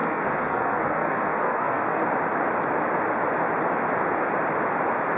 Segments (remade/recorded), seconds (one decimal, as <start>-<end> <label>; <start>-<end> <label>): 0.0-2.0 remade; 2.0-5.2 recorded